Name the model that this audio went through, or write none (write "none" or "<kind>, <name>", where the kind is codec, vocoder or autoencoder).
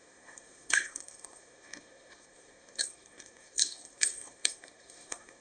codec, SNAC